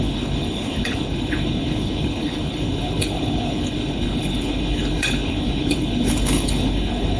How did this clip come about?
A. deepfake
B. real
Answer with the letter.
A